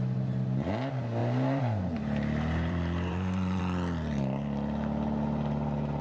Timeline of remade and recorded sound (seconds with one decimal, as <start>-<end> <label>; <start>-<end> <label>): 0.0-1.2 recorded; 1.2-3.6 remade; 3.6-6.0 recorded